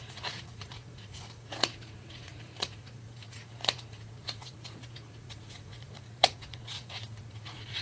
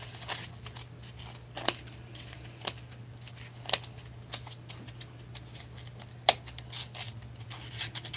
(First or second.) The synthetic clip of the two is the first